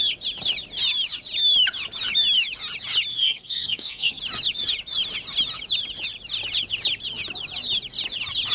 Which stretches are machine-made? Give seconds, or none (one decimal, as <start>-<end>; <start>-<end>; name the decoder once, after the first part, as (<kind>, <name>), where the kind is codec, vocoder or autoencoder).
3.1-4.2 (codec, SNAC)